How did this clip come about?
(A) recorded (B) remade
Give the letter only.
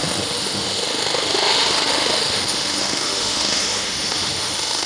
B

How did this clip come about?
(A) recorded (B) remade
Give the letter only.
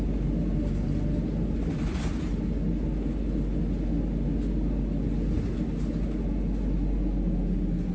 A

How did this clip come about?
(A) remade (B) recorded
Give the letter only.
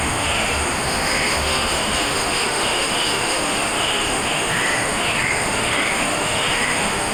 A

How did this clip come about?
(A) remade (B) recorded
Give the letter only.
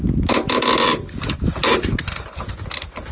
B